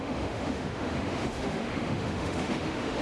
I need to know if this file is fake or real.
fake